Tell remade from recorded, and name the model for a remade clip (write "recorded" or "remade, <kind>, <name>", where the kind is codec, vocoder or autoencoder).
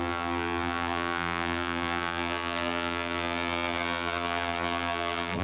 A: remade, vocoder, BigVGAN v2